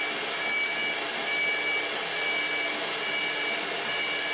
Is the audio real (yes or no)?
yes